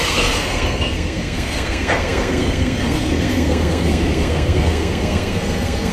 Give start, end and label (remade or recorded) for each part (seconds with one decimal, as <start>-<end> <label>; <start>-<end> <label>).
0.0-5.9 remade